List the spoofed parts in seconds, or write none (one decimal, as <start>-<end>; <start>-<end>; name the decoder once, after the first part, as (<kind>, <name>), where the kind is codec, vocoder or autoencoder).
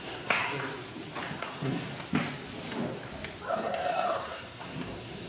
0.0-0.5 (codec, SNAC); 1.4-1.9; 3.5-5.3